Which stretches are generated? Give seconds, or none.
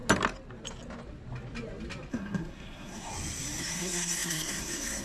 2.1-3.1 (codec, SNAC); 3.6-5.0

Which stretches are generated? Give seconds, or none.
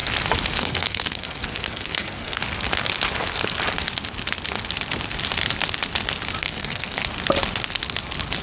0.6-2.4 (codec, SNAC); 6.4-7.0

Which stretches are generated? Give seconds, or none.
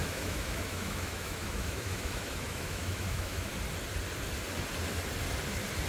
0.0-3.5 (autoencoder, DAC-VAE)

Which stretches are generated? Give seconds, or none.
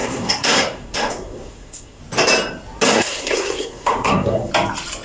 0.0-2.0 (codec, SNAC); 2.9-4.5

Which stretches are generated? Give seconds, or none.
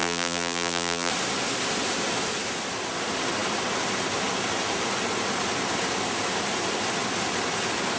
0.0-1.1 (vocoder, BigVGAN v2)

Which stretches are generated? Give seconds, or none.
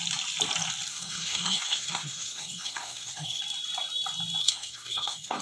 0.9-3.4 (codec, SNAC); 4.4-5.4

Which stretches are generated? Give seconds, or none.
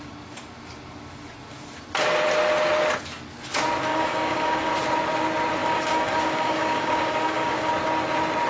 3.9-4.7 (codec, DAC); 5.6-7.7